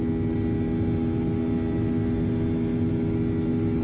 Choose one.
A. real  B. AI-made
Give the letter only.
A